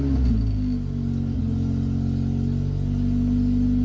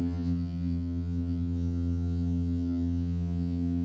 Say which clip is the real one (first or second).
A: first